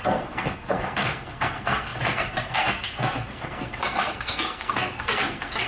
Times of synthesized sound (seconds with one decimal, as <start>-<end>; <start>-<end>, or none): 0.0-5.7

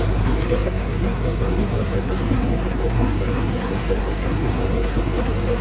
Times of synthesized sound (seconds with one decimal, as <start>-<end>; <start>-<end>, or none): 0.0-5.6

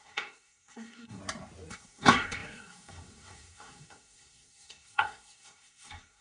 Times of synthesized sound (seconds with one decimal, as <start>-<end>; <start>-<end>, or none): 0.0-1.2; 1.7-6.2